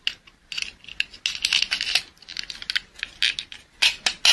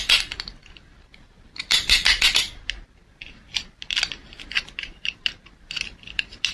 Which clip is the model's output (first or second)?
second